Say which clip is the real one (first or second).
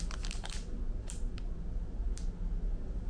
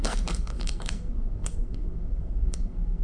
first